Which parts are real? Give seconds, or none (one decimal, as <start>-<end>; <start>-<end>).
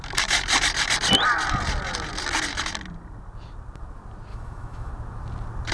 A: 0.0-4.3; 4.9-5.7